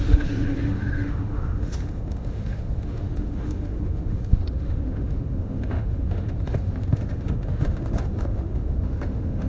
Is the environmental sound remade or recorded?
remade